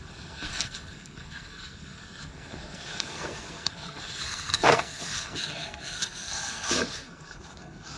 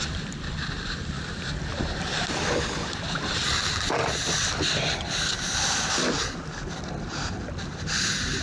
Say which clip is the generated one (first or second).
first